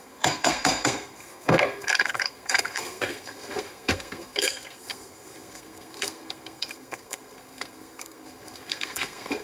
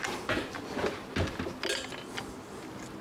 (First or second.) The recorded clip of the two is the second